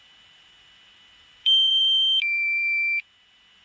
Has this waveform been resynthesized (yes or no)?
yes